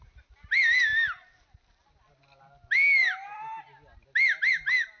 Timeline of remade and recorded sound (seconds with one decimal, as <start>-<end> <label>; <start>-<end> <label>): 0.0-5.0 recorded